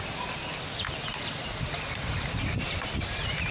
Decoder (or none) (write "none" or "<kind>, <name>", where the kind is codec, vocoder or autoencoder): none